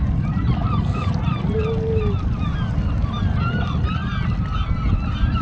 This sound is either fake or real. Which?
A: real